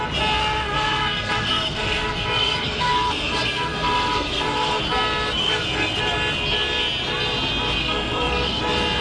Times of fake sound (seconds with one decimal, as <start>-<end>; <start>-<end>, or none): 0.4-4.8; 5.4-6.0; 7.8-8.6